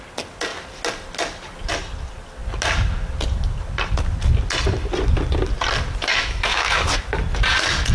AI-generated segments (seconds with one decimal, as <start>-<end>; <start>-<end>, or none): 6.1-6.8